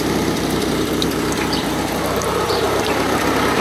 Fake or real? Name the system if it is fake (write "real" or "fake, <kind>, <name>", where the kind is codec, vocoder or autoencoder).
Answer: fake, vocoder, BigVGAN v2